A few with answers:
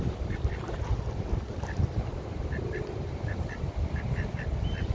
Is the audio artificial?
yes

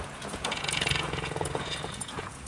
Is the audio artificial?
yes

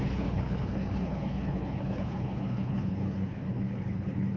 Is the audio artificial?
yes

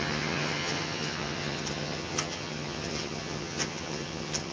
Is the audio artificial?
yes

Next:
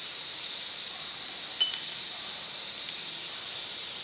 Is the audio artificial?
yes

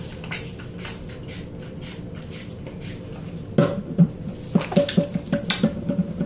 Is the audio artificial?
no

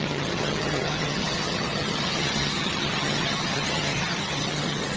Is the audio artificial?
yes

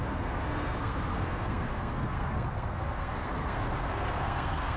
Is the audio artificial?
yes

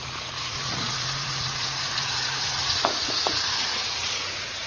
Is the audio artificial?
yes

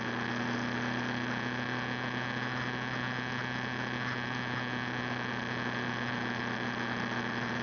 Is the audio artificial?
no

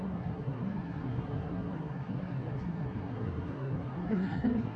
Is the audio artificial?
yes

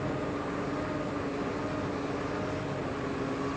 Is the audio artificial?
no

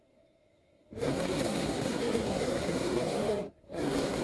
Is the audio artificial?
yes